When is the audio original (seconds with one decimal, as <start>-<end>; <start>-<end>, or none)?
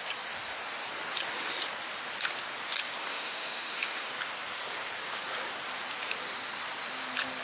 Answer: 0.0-3.0; 4.1-7.4